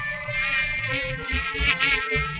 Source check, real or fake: fake